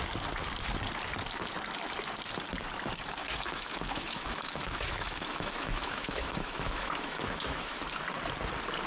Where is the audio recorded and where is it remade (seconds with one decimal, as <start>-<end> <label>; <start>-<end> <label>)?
0.0-3.2 recorded; 3.2-7.8 remade; 7.8-8.9 recorded